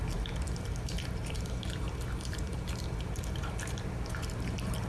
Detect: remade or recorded remade